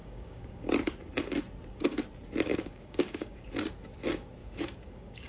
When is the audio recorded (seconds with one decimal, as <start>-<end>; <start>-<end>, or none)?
0.7-2.5; 3.5-4.4